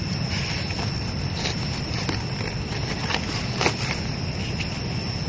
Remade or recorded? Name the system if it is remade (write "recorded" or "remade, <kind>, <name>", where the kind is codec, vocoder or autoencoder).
recorded